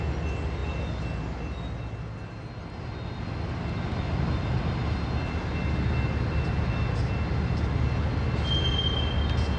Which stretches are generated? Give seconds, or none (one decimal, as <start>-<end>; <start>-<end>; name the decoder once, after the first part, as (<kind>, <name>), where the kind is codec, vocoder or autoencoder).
none